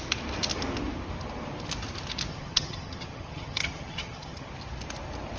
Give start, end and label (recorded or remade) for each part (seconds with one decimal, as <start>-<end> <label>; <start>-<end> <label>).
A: 0.0-2.3 recorded; 2.3-4.5 remade; 4.5-5.4 recorded